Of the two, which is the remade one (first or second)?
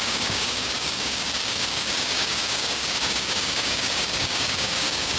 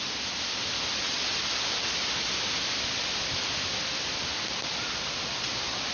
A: first